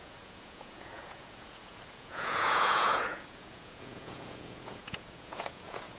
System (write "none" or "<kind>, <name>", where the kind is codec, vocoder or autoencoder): vocoder, Vocos